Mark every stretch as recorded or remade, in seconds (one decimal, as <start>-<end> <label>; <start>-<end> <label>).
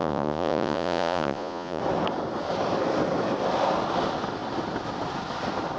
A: 0.0-1.8 remade; 1.8-5.8 recorded